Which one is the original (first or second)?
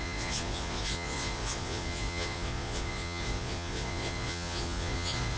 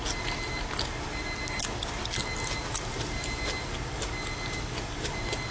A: second